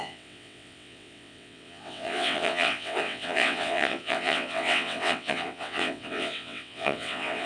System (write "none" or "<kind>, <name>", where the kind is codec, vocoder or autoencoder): vocoder, WaveNeXt